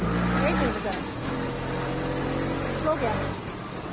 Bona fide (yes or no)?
yes